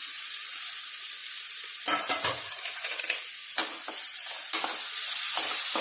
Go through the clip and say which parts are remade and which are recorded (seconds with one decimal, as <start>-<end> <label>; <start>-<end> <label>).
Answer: 0.0-3.0 remade; 3.0-5.8 recorded